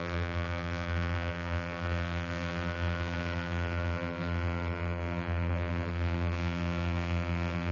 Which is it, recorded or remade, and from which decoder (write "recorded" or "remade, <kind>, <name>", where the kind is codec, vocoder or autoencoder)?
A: remade, vocoder, BigVGAN v2